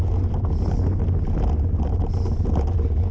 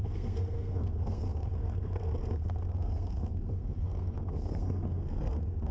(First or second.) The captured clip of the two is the first